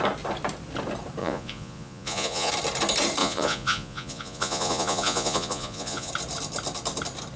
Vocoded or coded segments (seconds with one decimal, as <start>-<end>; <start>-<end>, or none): 1.2-2.5; 3.2-6.1